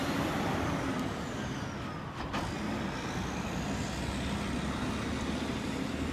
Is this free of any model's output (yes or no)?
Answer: yes